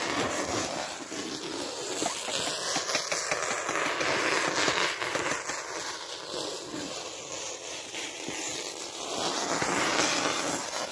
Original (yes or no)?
yes